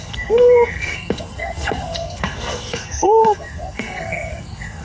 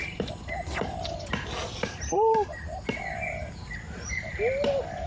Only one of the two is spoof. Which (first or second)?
first